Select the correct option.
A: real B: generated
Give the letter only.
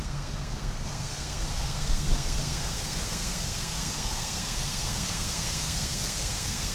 B